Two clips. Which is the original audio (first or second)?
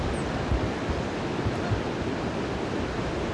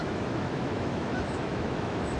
first